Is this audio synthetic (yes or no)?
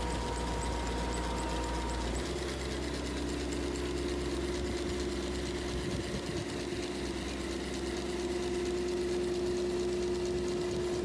no